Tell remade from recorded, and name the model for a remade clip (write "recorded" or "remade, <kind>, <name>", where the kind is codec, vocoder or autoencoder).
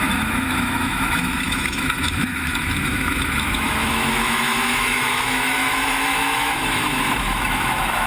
remade, autoencoder, DAC-VAE